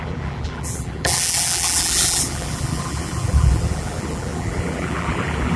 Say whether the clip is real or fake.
fake